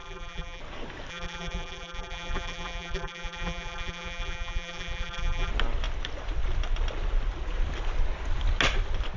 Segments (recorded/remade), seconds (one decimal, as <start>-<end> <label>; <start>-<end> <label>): 0.0-0.6 remade; 0.6-1.1 recorded; 1.1-5.5 remade; 5.5-9.2 recorded